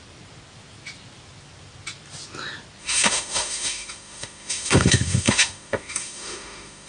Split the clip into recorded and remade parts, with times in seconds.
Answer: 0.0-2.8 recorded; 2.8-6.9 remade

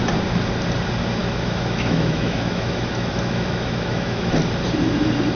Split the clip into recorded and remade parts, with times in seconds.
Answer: 0.0-1.2 recorded; 1.2-4.4 remade; 4.4-5.3 recorded

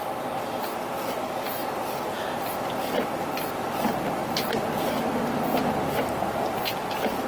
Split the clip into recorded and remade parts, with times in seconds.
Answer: 0.0-7.3 recorded

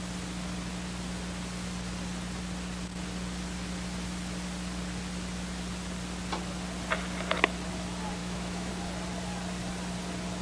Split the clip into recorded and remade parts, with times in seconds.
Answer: 0.0-8.2 recorded; 8.2-8.7 remade; 8.7-10.4 recorded